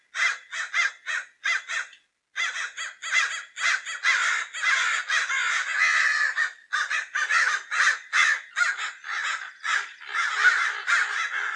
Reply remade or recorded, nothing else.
recorded